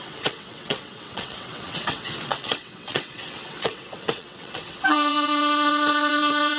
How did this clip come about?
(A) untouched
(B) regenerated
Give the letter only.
B